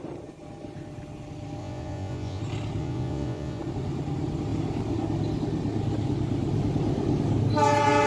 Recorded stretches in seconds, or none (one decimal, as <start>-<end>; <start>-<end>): 0.0-1.6; 2.4-2.8; 3.6-8.1